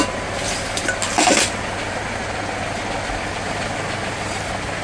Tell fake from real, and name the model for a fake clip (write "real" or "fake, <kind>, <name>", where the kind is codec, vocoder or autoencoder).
real